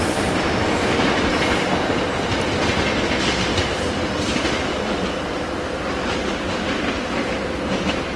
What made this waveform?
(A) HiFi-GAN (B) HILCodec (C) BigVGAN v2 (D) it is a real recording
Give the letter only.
D